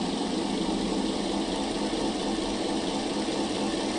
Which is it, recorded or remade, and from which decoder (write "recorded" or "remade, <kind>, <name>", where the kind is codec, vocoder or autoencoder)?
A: recorded